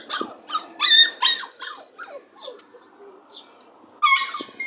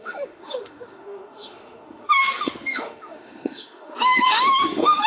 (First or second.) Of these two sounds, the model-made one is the second